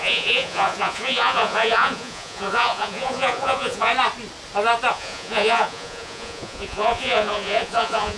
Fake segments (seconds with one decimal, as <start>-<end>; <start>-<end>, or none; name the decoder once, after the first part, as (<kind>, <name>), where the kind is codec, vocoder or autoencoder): 0.0-3.9 (vocoder, Vocos); 4.9-8.2